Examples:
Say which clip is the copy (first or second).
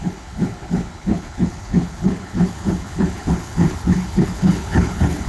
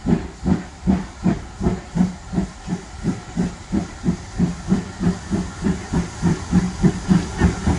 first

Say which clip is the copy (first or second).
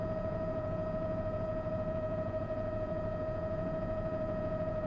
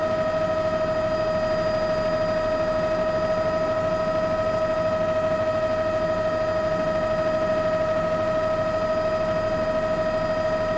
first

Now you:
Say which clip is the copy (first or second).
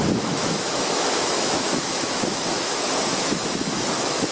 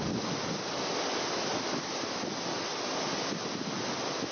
first